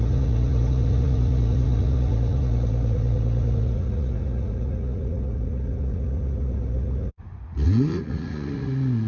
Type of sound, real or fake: fake